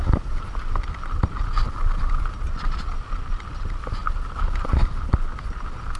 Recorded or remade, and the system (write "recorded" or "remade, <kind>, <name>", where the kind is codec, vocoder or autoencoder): recorded